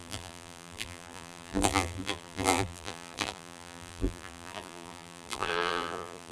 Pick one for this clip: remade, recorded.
remade